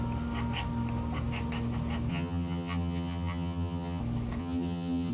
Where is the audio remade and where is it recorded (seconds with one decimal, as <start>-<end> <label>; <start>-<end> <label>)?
0.0-2.1 recorded; 2.1-4.0 remade; 4.0-4.4 recorded; 4.4-5.1 remade